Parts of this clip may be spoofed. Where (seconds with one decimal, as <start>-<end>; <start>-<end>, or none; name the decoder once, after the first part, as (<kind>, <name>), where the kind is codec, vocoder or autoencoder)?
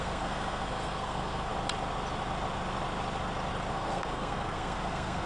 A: 0.0-1.5 (codec, SNAC); 3.7-5.3